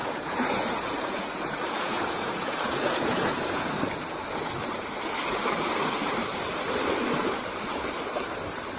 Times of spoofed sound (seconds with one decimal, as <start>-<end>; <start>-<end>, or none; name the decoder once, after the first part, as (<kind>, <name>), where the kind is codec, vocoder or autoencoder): 0.0-3.7 (vocoder, Vocos)

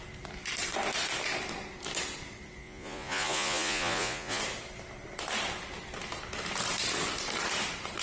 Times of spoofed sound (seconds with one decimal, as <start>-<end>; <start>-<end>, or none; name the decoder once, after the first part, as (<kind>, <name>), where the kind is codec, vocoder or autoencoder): 2.6-4.4 (vocoder, Vocos)

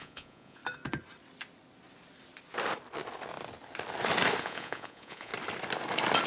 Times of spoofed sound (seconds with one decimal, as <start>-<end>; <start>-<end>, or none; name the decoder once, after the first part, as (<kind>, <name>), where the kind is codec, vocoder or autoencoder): 0.0-0.6 (vocoder, Vocos); 4.4-5.3

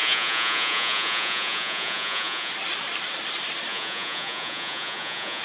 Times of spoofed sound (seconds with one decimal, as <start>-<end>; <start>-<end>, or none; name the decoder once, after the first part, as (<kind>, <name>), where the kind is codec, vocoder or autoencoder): 0.0-2.5 (vocoder, Vocos); 3.7-5.4

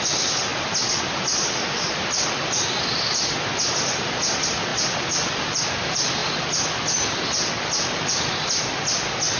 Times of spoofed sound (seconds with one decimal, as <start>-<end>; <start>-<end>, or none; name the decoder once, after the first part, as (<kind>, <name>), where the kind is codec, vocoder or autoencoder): none

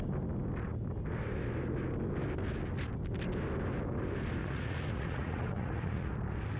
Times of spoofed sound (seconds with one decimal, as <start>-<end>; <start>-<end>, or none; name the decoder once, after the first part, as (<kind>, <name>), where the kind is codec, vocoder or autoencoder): 4.4-6.1 (vocoder, Vocos)